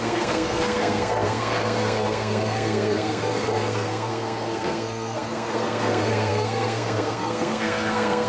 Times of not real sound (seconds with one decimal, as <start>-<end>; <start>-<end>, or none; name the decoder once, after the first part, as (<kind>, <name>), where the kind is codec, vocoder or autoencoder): 0.0-8.3 (codec, SNAC)